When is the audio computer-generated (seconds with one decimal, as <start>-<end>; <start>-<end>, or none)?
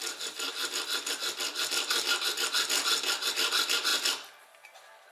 none